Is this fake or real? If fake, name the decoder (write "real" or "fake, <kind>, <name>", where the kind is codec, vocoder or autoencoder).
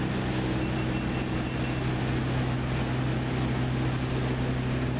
real